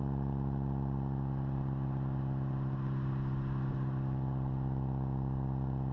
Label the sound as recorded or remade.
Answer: recorded